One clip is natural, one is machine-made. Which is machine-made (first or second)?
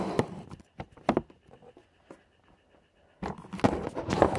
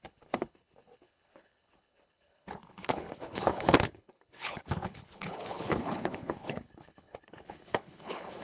second